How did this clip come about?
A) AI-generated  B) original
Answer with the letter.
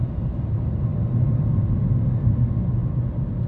B